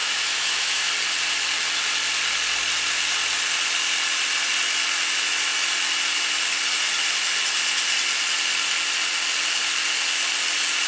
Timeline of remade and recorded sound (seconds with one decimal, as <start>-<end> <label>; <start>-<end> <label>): 0.0-0.9 remade; 0.9-10.9 recorded